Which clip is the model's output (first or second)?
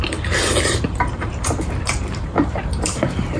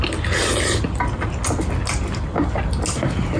first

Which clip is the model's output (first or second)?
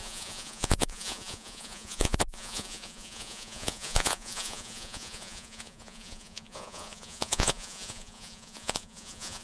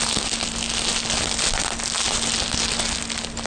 first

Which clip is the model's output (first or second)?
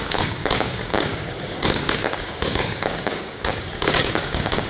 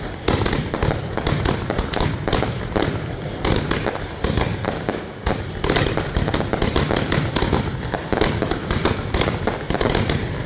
first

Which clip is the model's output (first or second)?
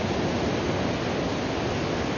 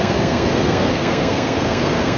second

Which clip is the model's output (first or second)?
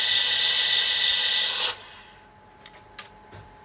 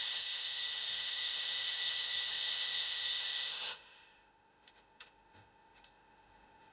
second